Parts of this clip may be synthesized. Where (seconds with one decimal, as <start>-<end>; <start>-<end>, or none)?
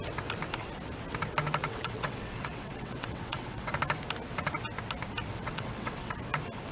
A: 1.6-3.7; 5.3-6.1